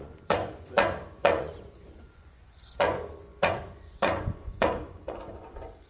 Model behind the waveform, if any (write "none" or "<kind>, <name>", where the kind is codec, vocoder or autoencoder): vocoder, Vocos